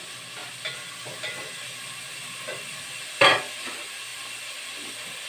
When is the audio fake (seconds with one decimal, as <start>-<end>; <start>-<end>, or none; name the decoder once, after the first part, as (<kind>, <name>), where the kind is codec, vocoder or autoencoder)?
0.0-5.3 (vocoder, BigVGAN v2)